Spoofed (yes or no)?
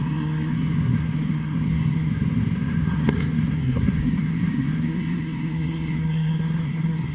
yes